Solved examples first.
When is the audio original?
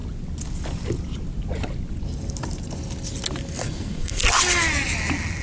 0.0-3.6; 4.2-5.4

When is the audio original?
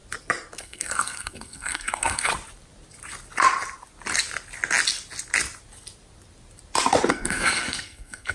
0.0-0.6; 2.3-7.1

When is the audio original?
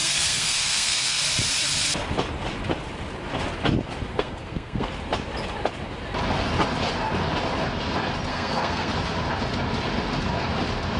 1.2-4.1; 4.9-8.3; 8.9-11.0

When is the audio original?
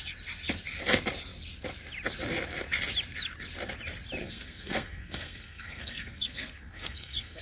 0.0-4.2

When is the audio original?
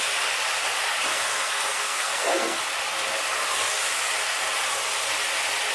0.0-1.1; 2.6-5.7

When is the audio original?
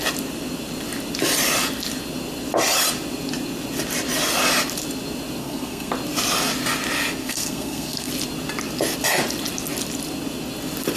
0.0-5.4; 5.9-7.2; 8.1-11.0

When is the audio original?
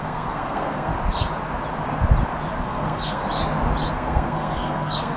0.9-2.6; 3.2-3.9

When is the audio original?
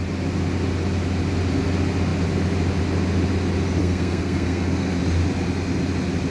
0.0-3.8; 5.0-6.3